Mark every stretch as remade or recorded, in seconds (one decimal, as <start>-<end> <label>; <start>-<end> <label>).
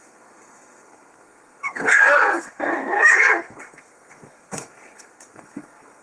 0.0-6.0 remade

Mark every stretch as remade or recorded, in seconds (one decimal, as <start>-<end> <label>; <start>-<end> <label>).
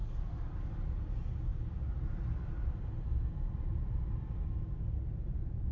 0.0-5.7 recorded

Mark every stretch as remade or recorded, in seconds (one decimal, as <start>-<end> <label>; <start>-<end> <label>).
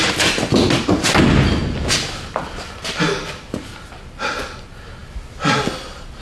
0.0-6.2 recorded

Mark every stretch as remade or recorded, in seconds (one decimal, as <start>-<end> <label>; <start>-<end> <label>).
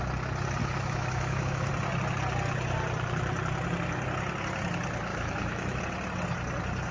0.0-0.6 recorded; 0.6-1.7 remade; 1.7-5.1 recorded; 5.1-5.8 remade; 5.8-6.9 recorded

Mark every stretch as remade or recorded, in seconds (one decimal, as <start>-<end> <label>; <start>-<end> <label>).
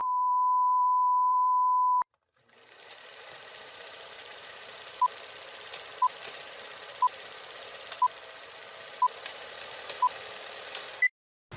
0.0-5.0 remade; 5.0-5.9 recorded; 5.9-8.0 remade; 8.0-9.3 recorded; 9.3-10.2 remade; 10.2-11.6 recorded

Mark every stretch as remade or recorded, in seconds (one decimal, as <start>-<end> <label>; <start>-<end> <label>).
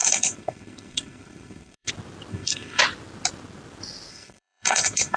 0.0-1.9 remade; 1.9-2.3 recorded; 2.3-2.8 remade; 2.8-4.1 recorded; 4.1-5.2 remade